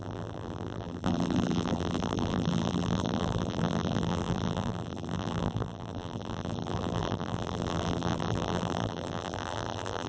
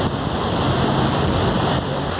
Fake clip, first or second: first